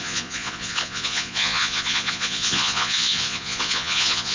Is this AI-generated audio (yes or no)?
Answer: yes